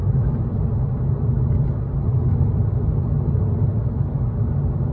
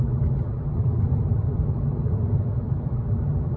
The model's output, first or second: second